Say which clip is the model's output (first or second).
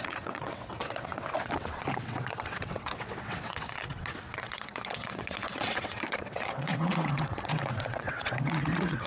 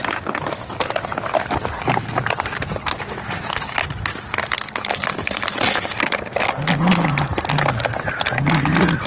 first